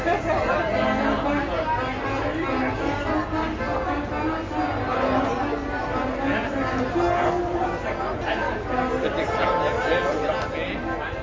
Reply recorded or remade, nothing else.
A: recorded